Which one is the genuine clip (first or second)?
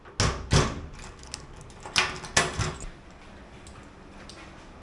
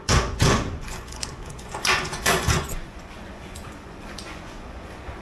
first